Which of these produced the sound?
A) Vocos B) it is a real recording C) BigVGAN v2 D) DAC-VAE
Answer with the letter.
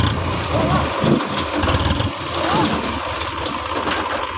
C